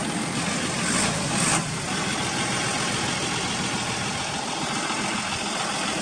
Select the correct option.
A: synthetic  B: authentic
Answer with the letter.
B